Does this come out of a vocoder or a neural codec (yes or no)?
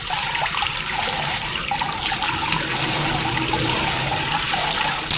yes